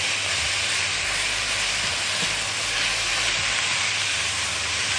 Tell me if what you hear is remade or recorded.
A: recorded